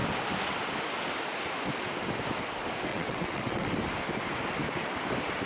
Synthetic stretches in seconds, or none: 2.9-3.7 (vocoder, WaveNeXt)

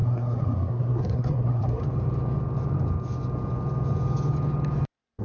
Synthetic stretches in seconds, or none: 0.0-1.8 (codec, SNAC)

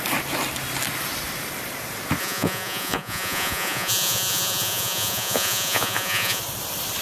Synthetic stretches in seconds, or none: 2.2-6.4 (vocoder, Vocos)

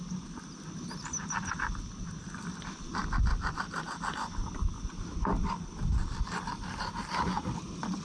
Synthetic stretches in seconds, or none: none

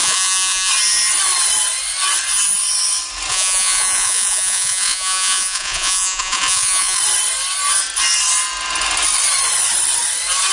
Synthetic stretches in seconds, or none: 0.0-0.7 (vocoder, Vocos); 3.3-7.0